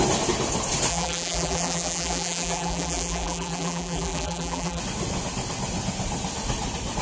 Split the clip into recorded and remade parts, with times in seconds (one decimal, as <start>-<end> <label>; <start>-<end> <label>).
0.0-0.9 recorded; 0.9-4.8 remade; 4.8-7.0 recorded